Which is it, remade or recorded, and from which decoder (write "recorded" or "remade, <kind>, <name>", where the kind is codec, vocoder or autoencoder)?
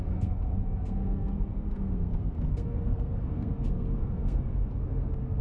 remade, codec, SNAC